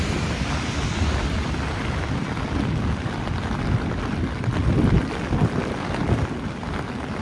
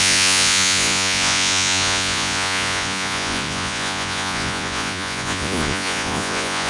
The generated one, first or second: second